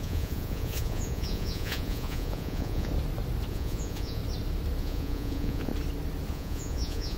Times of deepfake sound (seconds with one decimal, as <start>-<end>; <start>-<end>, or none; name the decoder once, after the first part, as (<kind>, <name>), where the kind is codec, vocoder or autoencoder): 0.0-2.9 (vocoder, Vocos); 3.5-4.2; 4.8-5.7; 6.3-7.2